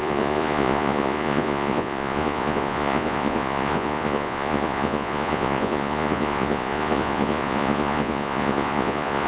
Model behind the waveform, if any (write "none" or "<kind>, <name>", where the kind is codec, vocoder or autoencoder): vocoder, Vocos